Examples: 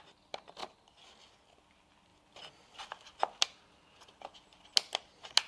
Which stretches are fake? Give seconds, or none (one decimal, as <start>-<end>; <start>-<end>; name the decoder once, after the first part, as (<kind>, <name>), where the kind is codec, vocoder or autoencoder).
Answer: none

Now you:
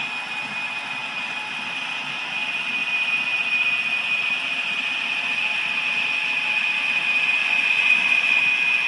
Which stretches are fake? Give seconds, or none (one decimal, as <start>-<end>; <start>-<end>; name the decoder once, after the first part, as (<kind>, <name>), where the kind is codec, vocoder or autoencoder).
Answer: 7.4-8.4 (vocoder, Vocos)

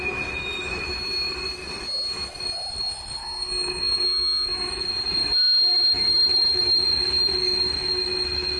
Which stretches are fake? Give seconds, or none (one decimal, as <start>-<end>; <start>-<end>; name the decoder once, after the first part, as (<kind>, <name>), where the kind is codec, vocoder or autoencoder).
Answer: 3.2-4.7 (autoencoder, DAC-VAE); 5.2-6.7